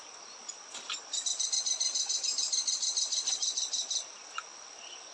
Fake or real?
real